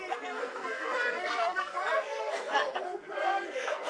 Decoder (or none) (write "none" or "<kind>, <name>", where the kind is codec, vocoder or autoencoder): codec, SNAC